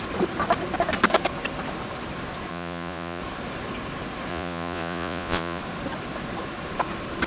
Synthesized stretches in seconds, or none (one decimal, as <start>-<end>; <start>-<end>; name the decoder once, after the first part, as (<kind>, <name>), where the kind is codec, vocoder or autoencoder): 2.5-3.2 (vocoder, Vocos); 4.3-5.6